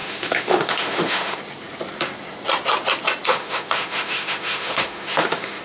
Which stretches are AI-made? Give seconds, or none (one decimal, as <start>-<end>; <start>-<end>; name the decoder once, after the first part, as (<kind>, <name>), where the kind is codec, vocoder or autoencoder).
0.0-1.4 (autoencoder, DAC-VAE); 3.3-5.6